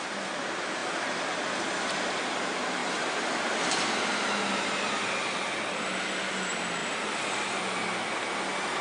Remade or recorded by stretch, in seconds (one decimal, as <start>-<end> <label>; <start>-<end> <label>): 0.0-0.8 recorded; 0.8-1.3 remade; 1.3-2.8 recorded; 2.8-3.8 remade; 3.8-6.8 recorded; 6.8-7.6 remade; 7.6-8.8 recorded